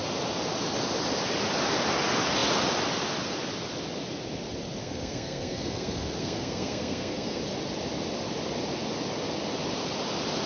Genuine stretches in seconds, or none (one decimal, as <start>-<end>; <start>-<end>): 0.0-4.8; 7.4-10.5